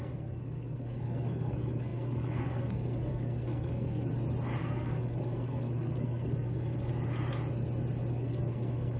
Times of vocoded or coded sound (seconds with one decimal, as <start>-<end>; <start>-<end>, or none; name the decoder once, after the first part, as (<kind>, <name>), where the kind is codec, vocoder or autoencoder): 0.0-4.1 (codec, SNAC); 4.6-6.9; 8.1-9.0